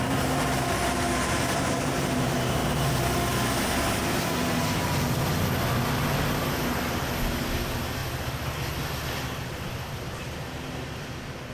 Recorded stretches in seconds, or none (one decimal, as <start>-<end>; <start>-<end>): 0.0-11.5